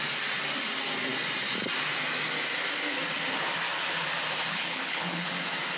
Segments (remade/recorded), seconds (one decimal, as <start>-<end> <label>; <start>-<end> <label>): 0.0-4.5 recorded; 4.5-5.3 remade; 5.3-5.8 recorded

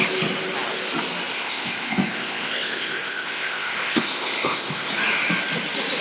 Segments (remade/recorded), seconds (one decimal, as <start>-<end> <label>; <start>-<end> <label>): 0.0-1.3 recorded; 1.3-4.9 remade; 4.9-6.0 recorded

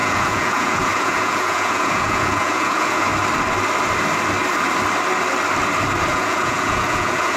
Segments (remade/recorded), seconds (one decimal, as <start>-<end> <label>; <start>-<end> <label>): 0.0-3.1 remade; 3.1-6.1 recorded; 6.1-7.4 remade

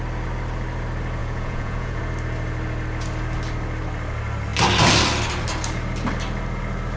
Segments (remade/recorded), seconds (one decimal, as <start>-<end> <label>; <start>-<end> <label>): 0.0-1.2 recorded; 1.2-2.0 remade; 2.0-7.0 recorded

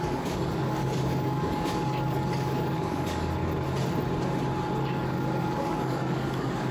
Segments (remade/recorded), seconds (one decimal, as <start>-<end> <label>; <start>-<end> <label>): 0.0-3.4 remade; 3.4-4.8 recorded; 4.8-6.7 remade

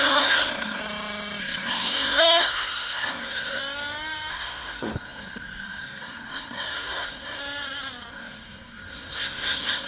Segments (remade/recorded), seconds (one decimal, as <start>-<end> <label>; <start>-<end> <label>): 0.0-0.8 remade; 0.8-1.4 recorded; 1.4-3.6 remade; 3.6-4.3 recorded; 4.3-7.4 remade; 7.4-8.1 recorded; 8.1-9.9 remade

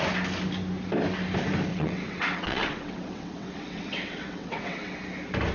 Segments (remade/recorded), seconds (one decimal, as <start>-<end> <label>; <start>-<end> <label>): 0.0-1.7 recorded; 1.7-5.0 remade; 5.0-5.5 recorded

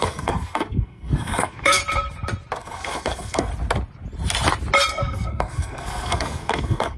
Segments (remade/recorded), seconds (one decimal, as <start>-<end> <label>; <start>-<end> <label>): 0.0-1.8 remade; 1.8-2.6 recorded; 2.6-3.5 remade; 3.5-4.9 recorded; 4.9-7.0 remade